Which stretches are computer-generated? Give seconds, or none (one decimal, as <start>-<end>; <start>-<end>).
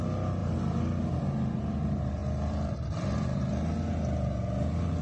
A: none